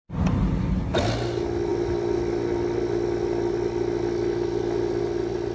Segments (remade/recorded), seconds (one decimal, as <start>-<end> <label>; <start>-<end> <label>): 0.0-5.5 recorded